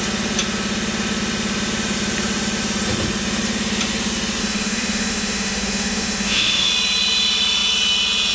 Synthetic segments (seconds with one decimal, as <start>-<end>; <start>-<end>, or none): 4.4-6.7